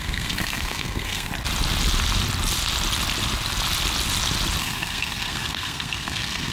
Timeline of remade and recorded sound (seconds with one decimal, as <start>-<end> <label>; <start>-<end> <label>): 0.0-1.3 remade; 1.3-4.6 recorded; 4.6-6.5 remade